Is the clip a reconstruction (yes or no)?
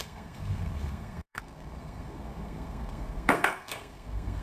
yes